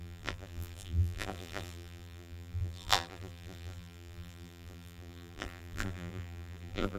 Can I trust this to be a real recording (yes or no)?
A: no